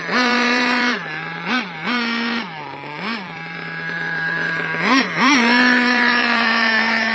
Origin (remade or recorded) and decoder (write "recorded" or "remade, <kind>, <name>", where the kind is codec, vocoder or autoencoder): remade, vocoder, BigVGAN v2